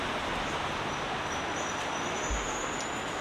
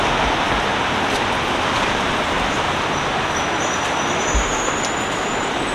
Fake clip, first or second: second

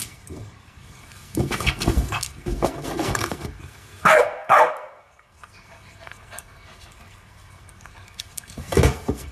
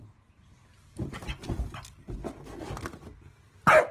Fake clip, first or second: first